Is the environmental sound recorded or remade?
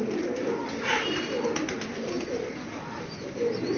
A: recorded